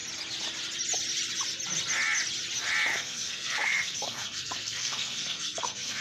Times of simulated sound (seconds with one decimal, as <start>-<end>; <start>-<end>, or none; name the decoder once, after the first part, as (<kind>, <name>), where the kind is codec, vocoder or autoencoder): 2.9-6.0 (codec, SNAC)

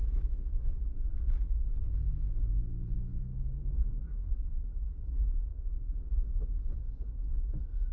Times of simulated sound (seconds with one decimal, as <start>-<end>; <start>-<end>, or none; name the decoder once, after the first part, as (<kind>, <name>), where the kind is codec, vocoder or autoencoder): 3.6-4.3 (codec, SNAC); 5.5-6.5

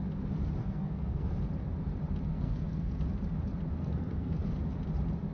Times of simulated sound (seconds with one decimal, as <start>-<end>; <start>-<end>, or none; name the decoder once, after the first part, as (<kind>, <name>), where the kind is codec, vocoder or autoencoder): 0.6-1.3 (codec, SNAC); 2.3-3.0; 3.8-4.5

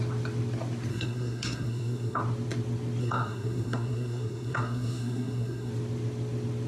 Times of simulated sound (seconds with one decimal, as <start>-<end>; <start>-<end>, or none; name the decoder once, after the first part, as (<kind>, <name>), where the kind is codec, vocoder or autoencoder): 0.9-2.2 (codec, SNAC); 3.0-5.7

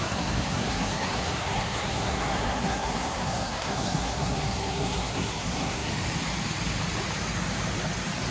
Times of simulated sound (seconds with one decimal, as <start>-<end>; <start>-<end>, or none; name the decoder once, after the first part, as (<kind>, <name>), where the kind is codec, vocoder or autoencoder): 0.0-5.9 (codec, SNAC)